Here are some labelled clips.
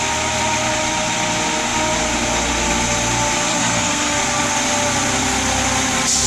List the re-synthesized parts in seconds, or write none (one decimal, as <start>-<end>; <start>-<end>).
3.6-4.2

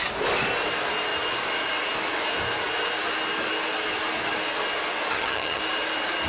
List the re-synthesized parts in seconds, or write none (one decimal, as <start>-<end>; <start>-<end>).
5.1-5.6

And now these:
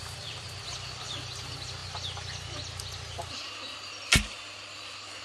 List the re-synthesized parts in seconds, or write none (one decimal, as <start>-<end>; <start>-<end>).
none

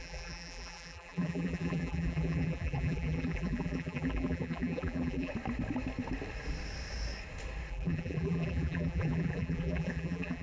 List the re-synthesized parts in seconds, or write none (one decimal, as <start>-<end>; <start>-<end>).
0.0-5.3; 7.7-10.4

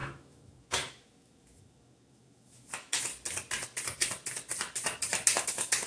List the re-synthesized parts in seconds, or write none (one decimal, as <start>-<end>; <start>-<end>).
0.0-3.1; 5.4-5.9

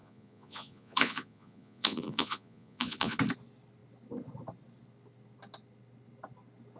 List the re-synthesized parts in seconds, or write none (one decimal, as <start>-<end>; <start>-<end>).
0.0-3.2